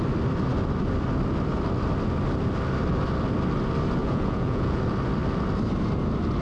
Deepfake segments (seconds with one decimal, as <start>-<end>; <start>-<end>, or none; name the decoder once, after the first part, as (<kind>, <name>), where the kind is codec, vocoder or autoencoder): 4.0-4.8 (vocoder, Vocos)